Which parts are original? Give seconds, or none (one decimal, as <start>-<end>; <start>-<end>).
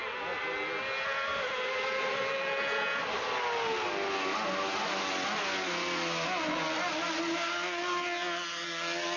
0.0-9.2